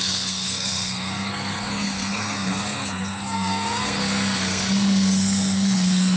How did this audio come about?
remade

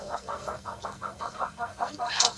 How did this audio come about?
remade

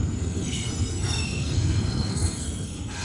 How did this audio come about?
remade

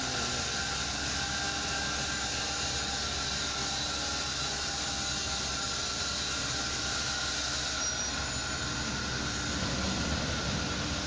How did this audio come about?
recorded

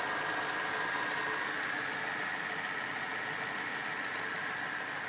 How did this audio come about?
recorded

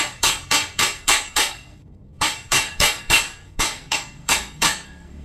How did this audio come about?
remade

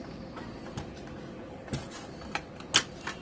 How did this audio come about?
recorded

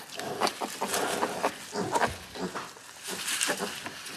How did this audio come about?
recorded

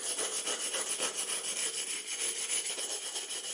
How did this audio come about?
recorded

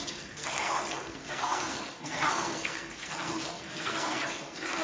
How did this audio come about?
remade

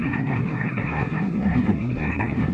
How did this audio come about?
remade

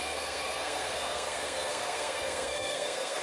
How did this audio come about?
remade